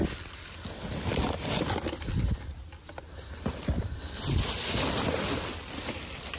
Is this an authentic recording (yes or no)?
yes